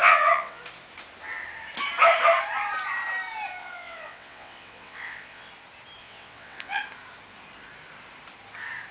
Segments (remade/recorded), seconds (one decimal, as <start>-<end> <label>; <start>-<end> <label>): 0.0-0.6 remade; 0.6-3.6 recorded; 3.6-5.5 remade; 5.5-6.0 recorded; 6.0-6.8 remade; 6.8-8.9 recorded

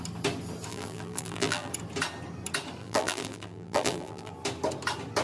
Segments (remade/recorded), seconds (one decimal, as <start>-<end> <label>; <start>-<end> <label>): 0.0-0.7 recorded; 0.7-1.7 remade; 1.7-2.8 recorded; 2.8-4.3 remade; 4.3-5.2 recorded

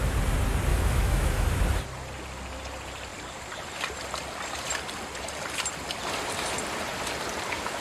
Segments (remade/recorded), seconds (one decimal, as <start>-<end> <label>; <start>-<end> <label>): 0.0-0.7 recorded; 0.7-1.5 remade; 1.5-7.8 recorded

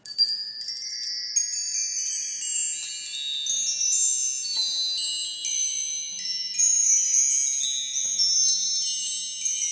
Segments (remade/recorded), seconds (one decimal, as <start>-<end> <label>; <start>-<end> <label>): 0.0-9.7 recorded